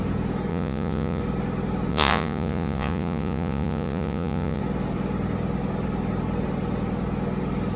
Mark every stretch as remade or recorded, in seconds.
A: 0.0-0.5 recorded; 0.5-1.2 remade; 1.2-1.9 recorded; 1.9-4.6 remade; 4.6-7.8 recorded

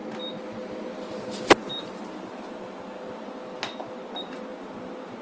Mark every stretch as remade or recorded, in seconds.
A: 0.0-5.2 recorded

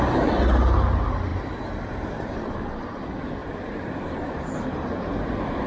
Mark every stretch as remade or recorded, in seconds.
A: 0.0-1.3 recorded; 1.3-2.1 remade; 2.1-3.4 recorded; 3.4-5.1 remade; 5.1-5.7 recorded

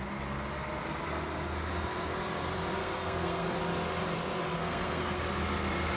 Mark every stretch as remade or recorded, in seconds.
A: 0.0-2.8 recorded; 2.8-3.6 remade; 3.6-4.5 recorded; 4.5-5.2 remade; 5.2-6.0 recorded